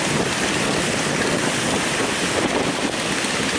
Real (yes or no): yes